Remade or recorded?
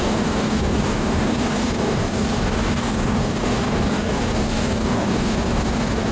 remade